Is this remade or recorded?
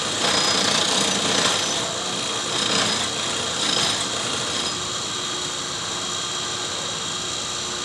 recorded